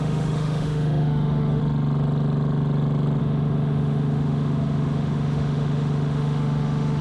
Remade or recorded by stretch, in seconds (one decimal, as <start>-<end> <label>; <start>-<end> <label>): 0.0-1.6 remade; 1.6-3.2 recorded; 3.2-7.0 remade